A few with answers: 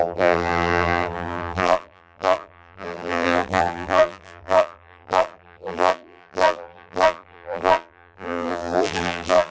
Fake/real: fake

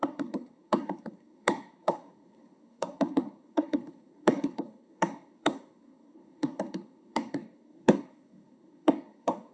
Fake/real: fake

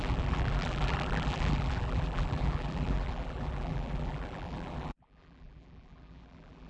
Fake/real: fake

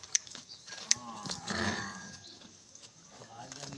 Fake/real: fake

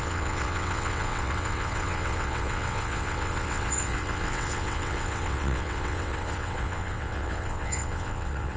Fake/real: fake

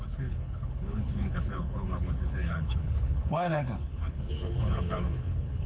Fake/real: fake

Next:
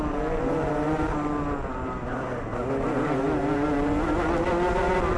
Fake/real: real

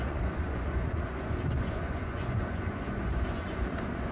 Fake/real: fake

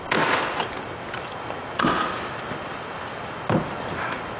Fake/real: real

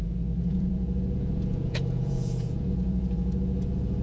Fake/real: fake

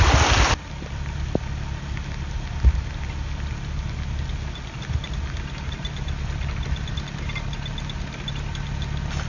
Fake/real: real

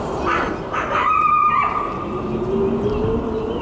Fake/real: real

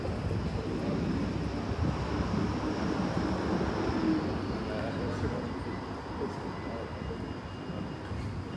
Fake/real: real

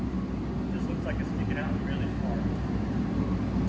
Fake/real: real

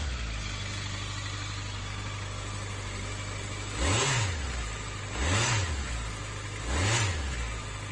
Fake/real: real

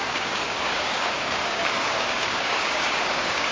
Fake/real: fake